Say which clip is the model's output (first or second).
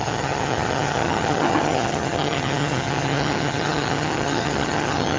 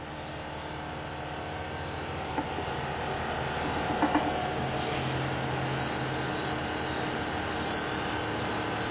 first